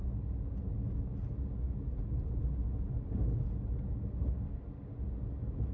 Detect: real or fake real